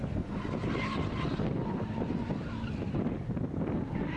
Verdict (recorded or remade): recorded